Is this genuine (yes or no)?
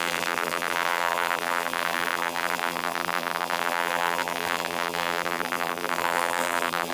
no